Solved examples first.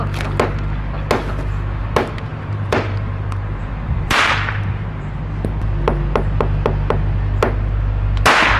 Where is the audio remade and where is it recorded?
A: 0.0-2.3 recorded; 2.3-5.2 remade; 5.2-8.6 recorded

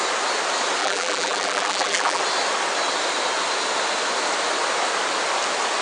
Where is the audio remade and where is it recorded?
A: 0.0-0.8 recorded; 0.8-2.2 remade; 2.2-5.8 recorded

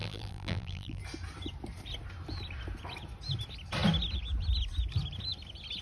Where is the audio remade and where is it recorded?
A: 0.0-1.0 remade; 1.0-5.8 recorded

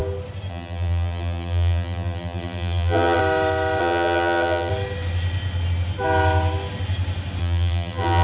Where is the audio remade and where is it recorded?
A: 0.0-0.5 recorded; 0.5-3.2 remade; 3.2-3.8 recorded; 3.8-4.7 remade; 4.7-7.4 recorded; 7.4-8.2 remade

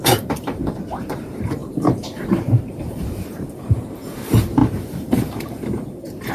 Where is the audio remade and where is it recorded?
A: 0.0-6.3 remade

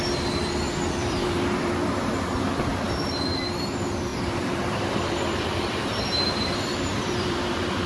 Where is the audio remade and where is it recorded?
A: 0.0-1.0 recorded; 1.0-1.7 remade; 1.7-4.1 recorded; 4.1-7.9 remade

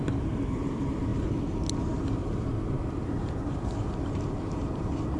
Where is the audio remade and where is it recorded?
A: 0.0-1.1 remade; 1.1-1.8 recorded; 1.8-2.2 remade; 2.2-3.0 recorded; 3.0-5.2 remade